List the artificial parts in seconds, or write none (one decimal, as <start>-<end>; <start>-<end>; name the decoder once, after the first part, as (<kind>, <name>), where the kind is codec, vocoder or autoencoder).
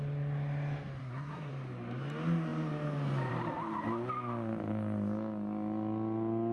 1.0-1.5 (codec, SNAC)